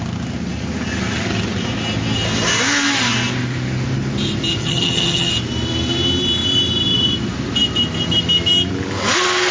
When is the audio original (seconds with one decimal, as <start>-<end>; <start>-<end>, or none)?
0.0-4.6; 5.3-9.5

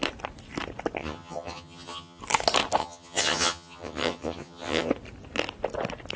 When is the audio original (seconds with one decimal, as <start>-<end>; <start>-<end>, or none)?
0.0-1.0; 2.2-2.8; 4.9-6.2

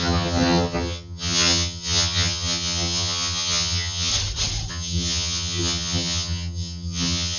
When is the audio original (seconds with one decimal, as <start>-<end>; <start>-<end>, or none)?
4.1-4.7

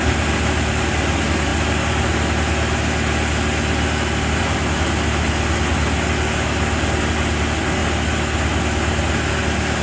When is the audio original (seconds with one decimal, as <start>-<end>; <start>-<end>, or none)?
0.0-9.8

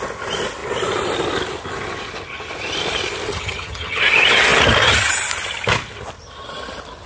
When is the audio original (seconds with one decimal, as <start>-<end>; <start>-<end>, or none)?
0.0-3.3; 4.0-7.1

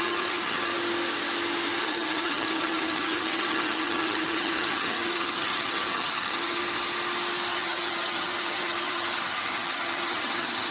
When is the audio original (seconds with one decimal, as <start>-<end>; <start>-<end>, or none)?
0.7-1.8; 6.6-7.5

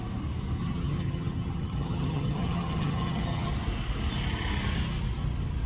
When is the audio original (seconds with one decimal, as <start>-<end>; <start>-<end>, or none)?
0.0-0.6; 3.5-5.7

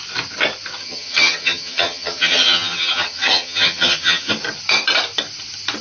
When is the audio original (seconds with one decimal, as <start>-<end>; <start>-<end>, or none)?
0.0-0.8; 4.3-5.8